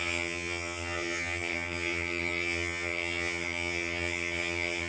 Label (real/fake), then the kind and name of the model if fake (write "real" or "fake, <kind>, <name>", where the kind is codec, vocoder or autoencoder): fake, vocoder, HiFi-GAN